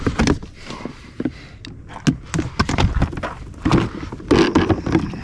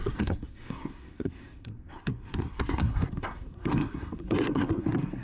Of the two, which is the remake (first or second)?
second